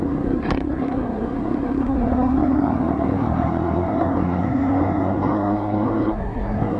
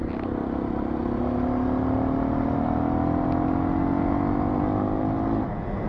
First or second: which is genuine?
second